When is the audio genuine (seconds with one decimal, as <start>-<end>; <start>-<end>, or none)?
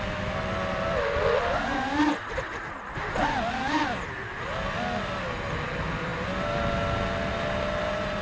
0.0-8.2